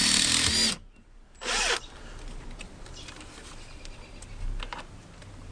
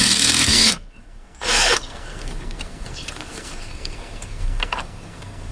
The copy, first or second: second